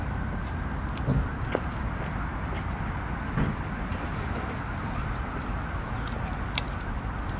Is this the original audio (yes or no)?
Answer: yes